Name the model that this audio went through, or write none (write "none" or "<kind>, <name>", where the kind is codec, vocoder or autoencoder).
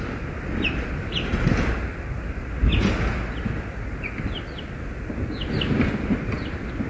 none